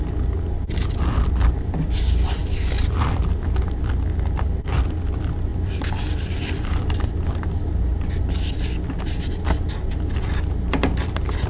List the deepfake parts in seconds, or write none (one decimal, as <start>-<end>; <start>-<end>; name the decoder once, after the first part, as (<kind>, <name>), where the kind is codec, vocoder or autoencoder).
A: 5.5-7.8 (vocoder, BigVGAN v2)